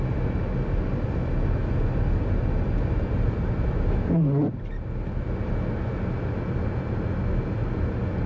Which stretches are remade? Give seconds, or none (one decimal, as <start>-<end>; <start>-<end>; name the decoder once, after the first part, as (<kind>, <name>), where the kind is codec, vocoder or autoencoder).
none